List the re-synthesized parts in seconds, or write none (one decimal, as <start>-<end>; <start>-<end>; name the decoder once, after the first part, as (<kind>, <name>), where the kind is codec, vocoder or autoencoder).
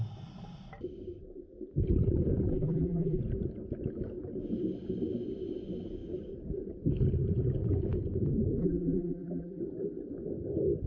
2.5-3.2 (vocoder, BigVGAN v2); 8.6-9.6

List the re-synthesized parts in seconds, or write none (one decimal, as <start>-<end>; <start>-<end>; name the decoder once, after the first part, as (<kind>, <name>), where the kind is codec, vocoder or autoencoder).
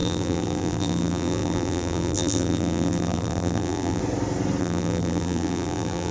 0.0-4.0 (vocoder, BigVGAN v2); 4.6-6.1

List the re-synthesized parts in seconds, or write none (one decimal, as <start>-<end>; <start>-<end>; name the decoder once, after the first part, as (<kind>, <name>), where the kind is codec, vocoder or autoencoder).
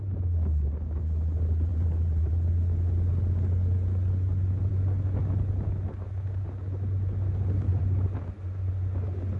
1.7-2.3 (vocoder, BigVGAN v2)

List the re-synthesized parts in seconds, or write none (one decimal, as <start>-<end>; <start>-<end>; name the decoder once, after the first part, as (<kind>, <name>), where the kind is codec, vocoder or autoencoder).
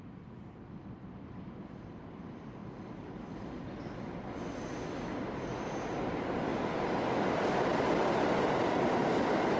0.0-2.6 (vocoder, BigVGAN v2); 5.3-9.6